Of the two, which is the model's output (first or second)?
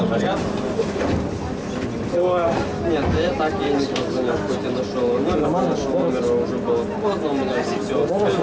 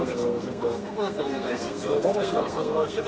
second